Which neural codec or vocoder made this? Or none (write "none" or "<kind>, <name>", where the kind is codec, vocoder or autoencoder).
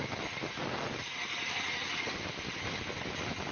none